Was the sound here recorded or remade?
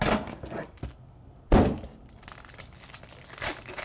recorded